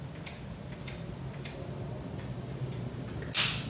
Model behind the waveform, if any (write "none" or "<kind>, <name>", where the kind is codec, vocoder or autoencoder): none